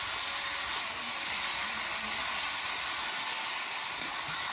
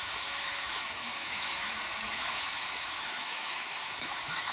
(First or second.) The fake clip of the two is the second